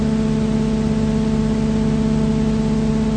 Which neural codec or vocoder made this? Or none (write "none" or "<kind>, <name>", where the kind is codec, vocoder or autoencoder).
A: none